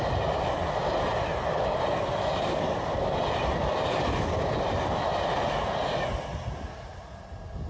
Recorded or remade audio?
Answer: recorded